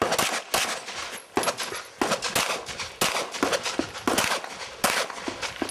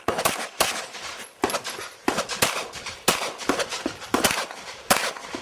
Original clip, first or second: first